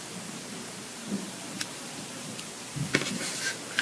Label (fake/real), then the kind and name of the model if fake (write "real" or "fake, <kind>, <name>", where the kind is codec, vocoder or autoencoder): fake, vocoder, BigVGAN v2